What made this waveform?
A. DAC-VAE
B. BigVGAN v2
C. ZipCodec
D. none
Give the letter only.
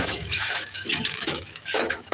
A